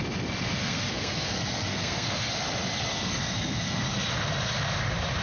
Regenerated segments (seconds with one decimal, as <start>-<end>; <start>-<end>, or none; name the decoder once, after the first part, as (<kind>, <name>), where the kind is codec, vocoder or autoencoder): 0.6-2.3 (codec, SNAC); 2.9-3.8